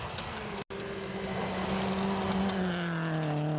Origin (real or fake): real